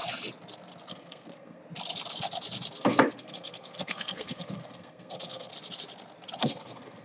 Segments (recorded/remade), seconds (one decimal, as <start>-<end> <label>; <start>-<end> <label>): 0.0-0.9 recorded; 0.9-1.6 remade; 1.6-2.8 recorded; 2.8-5.5 remade; 5.5-6.4 recorded; 6.4-7.0 remade